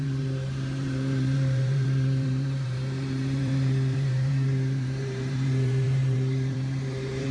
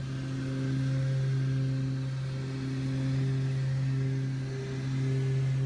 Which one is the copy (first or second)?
first